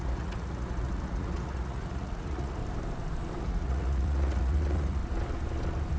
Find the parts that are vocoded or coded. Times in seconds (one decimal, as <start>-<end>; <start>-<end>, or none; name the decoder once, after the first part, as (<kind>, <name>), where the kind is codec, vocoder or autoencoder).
0.0-2.6 (vocoder, Vocos); 3.4-5.0